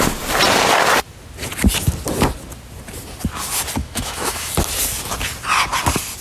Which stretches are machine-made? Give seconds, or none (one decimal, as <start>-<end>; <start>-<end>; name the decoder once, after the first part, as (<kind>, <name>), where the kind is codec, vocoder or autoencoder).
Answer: 3.8-4.5 (autoencoder, DAC-VAE)